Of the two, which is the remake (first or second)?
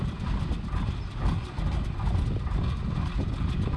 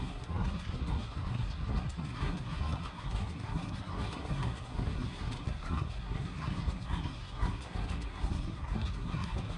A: second